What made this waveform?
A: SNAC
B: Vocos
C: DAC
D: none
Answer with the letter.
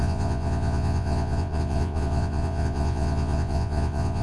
B